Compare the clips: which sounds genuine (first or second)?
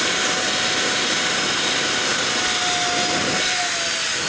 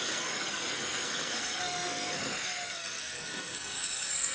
first